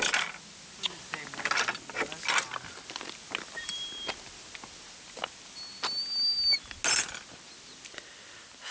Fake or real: real